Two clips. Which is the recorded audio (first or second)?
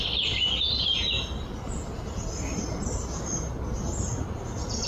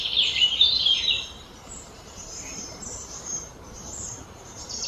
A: first